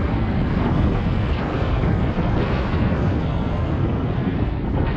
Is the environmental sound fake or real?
fake